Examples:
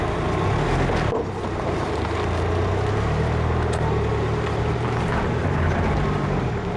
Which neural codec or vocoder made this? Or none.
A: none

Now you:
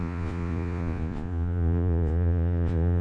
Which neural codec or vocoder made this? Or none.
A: vocoder, Vocos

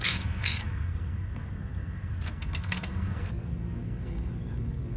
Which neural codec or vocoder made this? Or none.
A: codec, SNAC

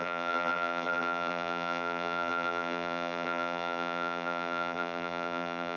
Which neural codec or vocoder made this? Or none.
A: vocoder, BigVGAN v2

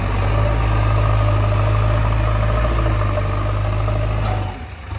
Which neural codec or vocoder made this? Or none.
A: none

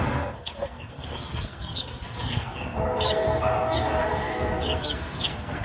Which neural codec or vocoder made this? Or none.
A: codec, SNAC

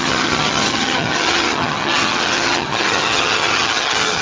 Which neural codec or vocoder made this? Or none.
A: vocoder, HiFi-GAN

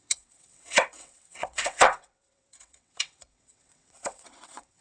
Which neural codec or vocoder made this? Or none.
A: vocoder, WaveNeXt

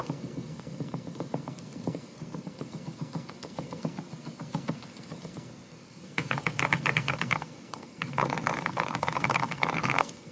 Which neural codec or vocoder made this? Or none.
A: codec, SNAC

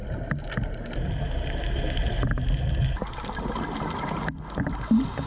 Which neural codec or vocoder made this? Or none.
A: none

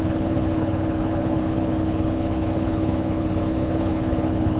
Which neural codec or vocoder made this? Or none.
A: codec, HILCodec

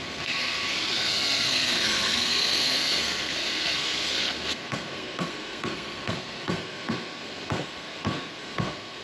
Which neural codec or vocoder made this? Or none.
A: codec, SNAC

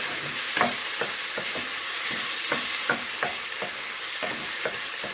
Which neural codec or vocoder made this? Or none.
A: none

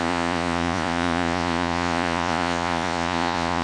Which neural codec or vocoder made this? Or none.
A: vocoder, Vocos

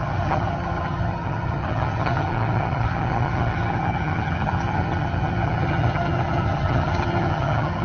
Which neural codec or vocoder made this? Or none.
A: vocoder, HiFi-GAN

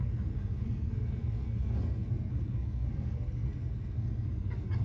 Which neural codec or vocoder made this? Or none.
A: codec, SNAC